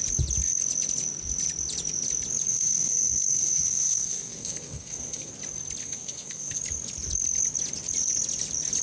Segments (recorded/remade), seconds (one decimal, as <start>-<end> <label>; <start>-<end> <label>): 0.0-2.5 recorded; 2.5-5.3 remade; 5.3-5.8 recorded; 5.8-6.6 remade; 6.6-8.8 recorded